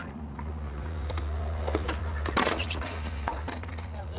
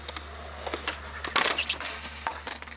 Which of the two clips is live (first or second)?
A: second